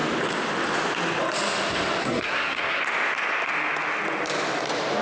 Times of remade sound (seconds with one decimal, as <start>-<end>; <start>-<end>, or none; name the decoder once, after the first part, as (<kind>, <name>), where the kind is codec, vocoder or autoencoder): 2.0-2.8 (codec, SNAC)

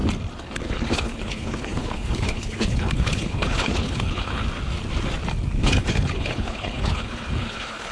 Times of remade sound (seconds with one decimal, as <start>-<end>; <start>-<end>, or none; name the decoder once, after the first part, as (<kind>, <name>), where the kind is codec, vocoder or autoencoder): 0.6-4.4 (codec, HILCodec); 5.6-7.9